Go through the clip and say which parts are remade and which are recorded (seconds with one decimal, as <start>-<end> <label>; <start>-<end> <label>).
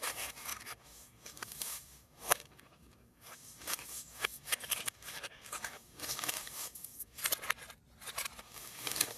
0.0-7.2 remade; 7.2-8.4 recorded; 8.4-9.2 remade